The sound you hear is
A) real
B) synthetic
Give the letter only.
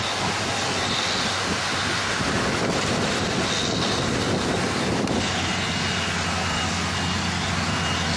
A